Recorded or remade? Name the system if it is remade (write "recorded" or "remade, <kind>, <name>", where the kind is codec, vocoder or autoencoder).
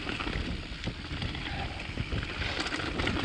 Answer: recorded